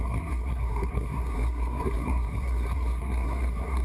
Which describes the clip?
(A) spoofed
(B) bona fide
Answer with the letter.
A